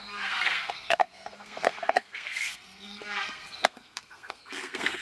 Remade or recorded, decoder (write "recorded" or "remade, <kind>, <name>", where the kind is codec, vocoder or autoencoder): remade, codec, SNAC